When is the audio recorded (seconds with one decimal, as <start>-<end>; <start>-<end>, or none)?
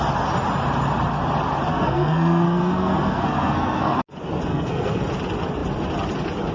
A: 0.0-1.7; 4.0-4.5; 5.0-6.5